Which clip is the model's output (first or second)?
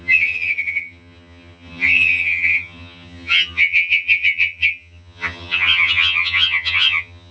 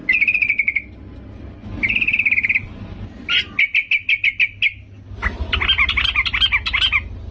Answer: first